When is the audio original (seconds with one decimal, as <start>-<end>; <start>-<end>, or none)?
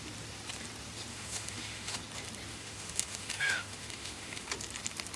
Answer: 0.0-1.1; 2.0-2.5; 4.5-5.2